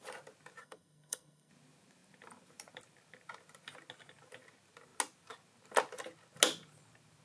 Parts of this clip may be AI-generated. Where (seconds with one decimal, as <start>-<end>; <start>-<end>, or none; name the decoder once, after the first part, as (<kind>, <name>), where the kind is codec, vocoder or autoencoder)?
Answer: 0.6-1.5 (codec, SNAC)

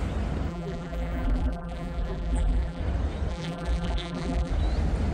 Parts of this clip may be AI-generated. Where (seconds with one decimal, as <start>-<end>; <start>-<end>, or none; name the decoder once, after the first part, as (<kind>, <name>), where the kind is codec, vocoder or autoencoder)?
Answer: 0.5-2.8 (vocoder, BigVGAN v2); 3.3-4.5

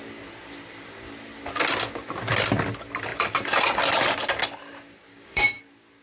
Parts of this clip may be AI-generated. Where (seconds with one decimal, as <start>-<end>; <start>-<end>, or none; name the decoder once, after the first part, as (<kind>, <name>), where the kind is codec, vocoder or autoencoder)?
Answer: 5.1-5.6 (codec, DAC)

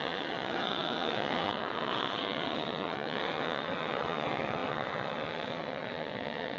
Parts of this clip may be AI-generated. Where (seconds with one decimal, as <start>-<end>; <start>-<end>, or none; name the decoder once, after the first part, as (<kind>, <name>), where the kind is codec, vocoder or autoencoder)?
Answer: 0.0-6.6 (vocoder, WaveNeXt)

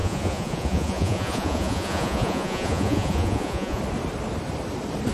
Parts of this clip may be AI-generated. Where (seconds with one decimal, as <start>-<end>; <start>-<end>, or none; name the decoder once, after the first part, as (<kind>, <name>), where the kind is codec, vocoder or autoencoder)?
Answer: 0.0-3.8 (vocoder, Vocos)

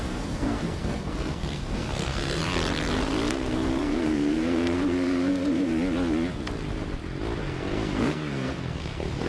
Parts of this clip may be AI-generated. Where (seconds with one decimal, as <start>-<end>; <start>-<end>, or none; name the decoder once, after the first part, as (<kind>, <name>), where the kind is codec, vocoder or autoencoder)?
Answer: 0.0-2.4 (codec, SNAC); 3.3-5.7; 7.4-9.3